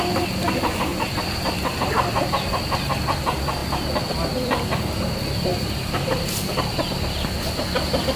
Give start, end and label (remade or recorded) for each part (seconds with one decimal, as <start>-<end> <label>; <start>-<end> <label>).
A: 0.0-3.6 recorded; 3.6-4.8 remade; 4.8-5.5 recorded; 5.5-7.4 remade; 7.4-8.2 recorded